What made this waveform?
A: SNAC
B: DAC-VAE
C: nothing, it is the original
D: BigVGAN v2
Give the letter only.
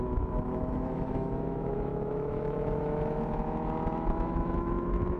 B